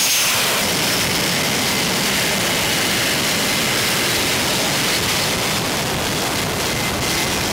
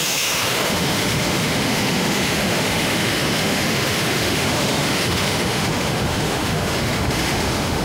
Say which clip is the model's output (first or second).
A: second